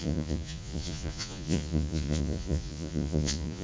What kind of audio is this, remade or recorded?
remade